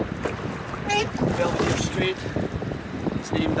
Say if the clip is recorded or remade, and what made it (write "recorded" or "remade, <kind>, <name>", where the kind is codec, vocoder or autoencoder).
recorded